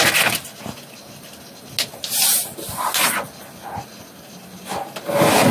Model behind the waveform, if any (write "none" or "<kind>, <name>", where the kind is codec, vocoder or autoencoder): none